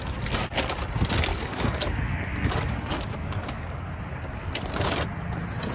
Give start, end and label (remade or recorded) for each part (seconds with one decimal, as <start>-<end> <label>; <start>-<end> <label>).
0.0-1.3 recorded; 1.3-3.9 remade; 3.9-5.7 recorded